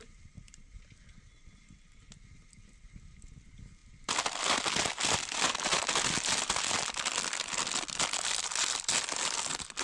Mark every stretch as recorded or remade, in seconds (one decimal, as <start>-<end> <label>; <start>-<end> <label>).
0.0-9.8 recorded